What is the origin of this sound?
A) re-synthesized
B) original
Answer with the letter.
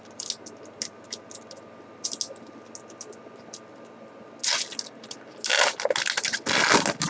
B